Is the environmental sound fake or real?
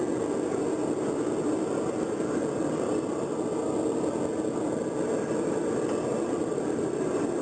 real